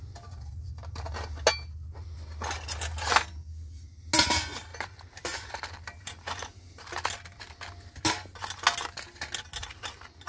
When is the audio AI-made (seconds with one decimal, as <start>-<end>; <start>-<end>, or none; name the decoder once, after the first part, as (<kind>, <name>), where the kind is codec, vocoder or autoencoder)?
none